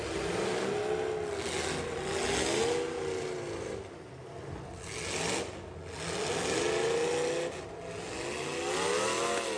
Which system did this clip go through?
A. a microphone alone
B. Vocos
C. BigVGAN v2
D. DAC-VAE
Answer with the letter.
A